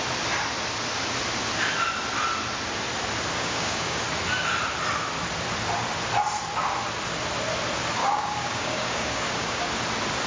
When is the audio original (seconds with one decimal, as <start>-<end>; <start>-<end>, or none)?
0.0-3.4; 4.0-8.0; 9.7-10.3